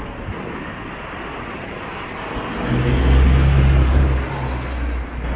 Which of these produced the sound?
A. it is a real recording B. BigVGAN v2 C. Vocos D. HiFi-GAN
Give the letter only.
A